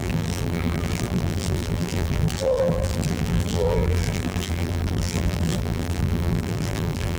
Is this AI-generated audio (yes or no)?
yes